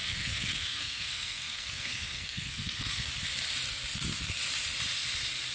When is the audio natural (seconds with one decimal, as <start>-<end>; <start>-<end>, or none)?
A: 3.1-5.5